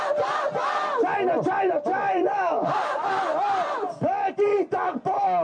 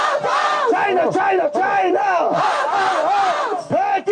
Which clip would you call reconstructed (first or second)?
first